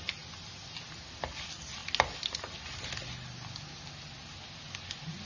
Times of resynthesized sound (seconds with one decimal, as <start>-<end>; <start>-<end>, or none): none